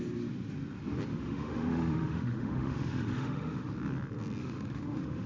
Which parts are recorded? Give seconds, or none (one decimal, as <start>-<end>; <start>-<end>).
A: 0.0-1.1; 3.7-4.4